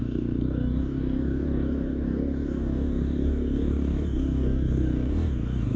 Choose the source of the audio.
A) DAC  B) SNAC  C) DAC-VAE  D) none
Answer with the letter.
A